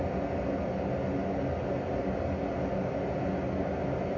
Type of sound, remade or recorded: recorded